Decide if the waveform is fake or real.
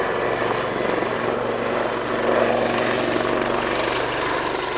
real